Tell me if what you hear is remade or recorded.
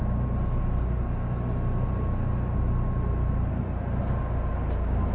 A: recorded